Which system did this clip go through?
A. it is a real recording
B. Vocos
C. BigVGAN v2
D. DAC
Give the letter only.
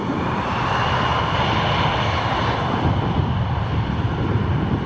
A